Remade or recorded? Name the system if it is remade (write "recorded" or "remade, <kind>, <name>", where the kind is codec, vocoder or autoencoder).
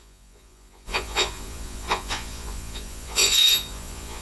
remade, vocoder, Vocos